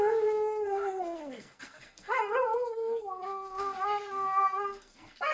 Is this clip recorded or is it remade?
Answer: remade